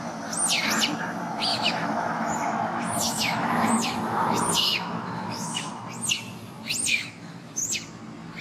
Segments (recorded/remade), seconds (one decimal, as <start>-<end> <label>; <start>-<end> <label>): 0.0-1.5 recorded; 1.5-5.7 remade; 5.7-6.9 recorded; 6.9-7.8 remade; 7.8-8.4 recorded